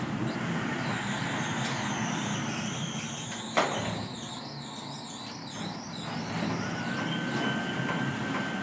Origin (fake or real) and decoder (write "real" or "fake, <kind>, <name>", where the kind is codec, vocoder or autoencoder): real